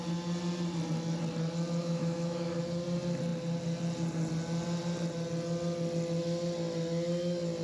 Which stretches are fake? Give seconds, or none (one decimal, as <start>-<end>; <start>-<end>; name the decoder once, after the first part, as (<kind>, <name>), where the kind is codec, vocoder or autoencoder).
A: 1.8-2.6 (autoencoder, DAC-VAE)

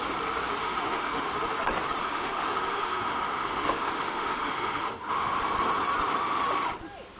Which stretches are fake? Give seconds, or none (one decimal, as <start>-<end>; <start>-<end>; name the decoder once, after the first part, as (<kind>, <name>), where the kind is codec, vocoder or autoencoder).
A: 0.6-1.3 (autoencoder, DAC-VAE); 2.0-5.4

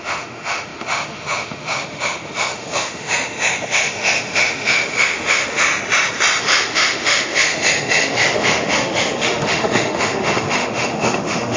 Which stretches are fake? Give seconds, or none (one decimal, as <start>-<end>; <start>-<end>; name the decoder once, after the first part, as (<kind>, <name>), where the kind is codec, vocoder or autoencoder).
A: 0.0-5.7 (autoencoder, DAC-VAE); 6.4-11.6

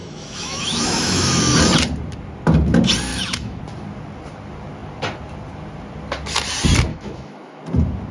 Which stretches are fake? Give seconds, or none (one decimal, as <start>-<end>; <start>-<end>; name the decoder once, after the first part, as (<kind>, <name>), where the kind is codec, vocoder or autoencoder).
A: 0.0-1.4 (autoencoder, DAC-VAE); 3.1-3.6; 6.9-7.6